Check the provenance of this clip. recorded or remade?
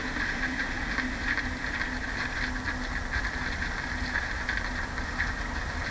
recorded